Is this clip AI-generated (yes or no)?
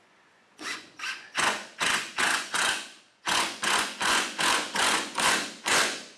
yes